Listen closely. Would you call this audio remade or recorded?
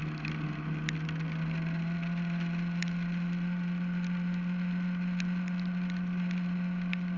recorded